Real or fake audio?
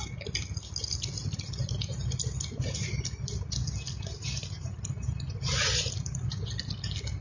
real